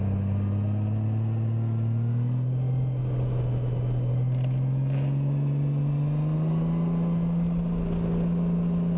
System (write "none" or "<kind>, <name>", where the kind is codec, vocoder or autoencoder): none